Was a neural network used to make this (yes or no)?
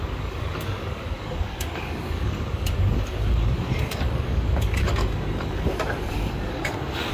yes